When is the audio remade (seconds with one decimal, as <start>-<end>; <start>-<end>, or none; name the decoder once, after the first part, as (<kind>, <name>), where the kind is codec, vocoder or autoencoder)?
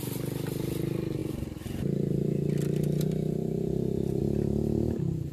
none